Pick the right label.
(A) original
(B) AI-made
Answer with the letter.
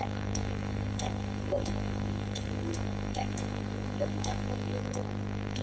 B